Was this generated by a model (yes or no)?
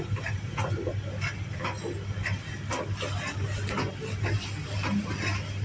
no